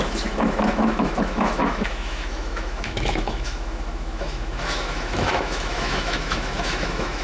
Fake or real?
fake